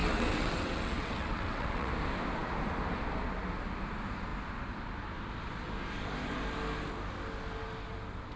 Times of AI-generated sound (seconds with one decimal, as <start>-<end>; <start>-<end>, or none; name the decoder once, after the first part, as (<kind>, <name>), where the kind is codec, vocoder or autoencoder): 0.0-1.9 (vocoder, WaveNeXt)